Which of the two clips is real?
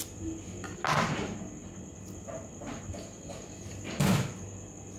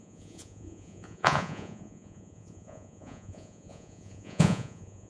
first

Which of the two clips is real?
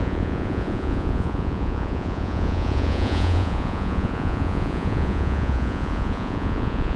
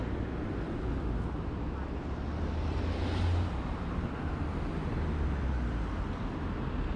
second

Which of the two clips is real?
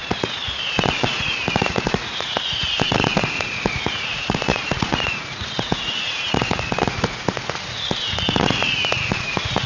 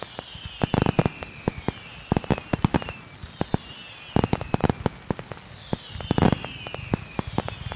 second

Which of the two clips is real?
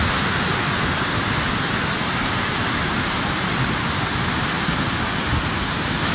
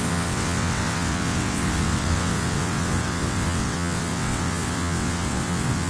first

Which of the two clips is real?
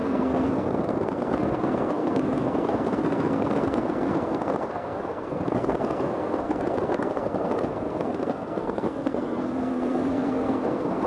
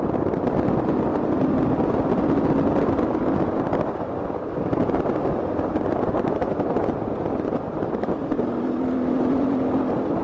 second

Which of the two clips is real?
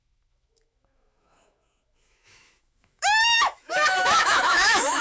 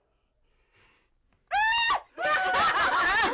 second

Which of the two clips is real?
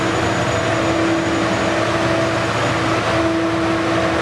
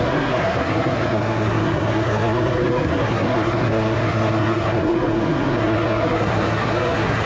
first